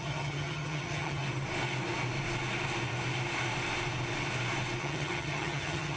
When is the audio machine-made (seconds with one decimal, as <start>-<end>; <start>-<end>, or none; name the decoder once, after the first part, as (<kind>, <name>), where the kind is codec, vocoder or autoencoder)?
0.0-1.2 (vocoder, HiFi-GAN); 4.8-6.0